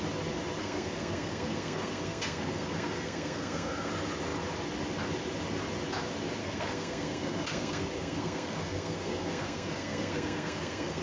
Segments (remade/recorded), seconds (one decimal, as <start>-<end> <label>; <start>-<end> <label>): 0.0-0.6 recorded; 0.6-3.9 remade; 3.9-6.4 recorded; 6.4-11.0 remade